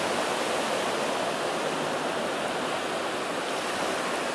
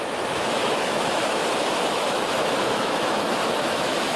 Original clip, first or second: first